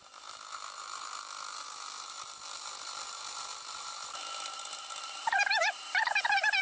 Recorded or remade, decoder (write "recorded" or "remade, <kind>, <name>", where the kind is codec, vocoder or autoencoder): remade, vocoder, BigVGAN v2